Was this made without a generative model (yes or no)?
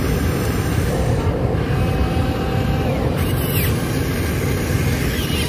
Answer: yes